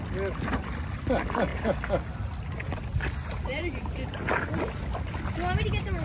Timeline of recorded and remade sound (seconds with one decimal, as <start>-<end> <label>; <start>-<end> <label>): 0.0-6.0 recorded